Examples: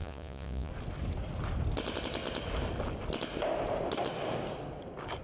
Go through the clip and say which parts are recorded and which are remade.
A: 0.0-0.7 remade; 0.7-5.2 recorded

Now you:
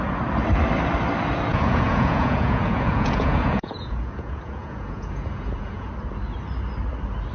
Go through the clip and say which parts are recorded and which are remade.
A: 0.0-1.5 recorded; 1.5-5.9 remade; 5.9-7.3 recorded